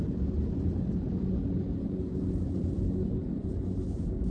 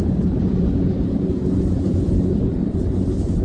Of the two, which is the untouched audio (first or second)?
first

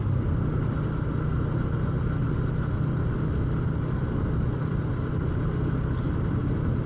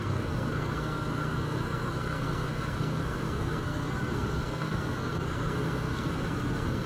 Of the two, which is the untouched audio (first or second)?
first